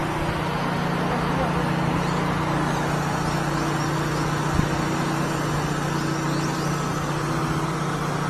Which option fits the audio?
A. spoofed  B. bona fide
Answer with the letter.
B